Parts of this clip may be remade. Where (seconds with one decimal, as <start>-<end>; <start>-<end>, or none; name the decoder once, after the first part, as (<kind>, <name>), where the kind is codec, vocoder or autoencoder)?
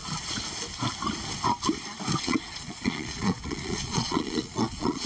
2.2-5.1 (vocoder, Vocos)